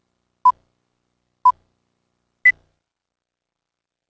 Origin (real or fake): real